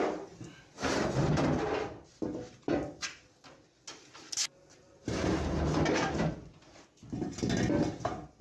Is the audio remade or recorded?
recorded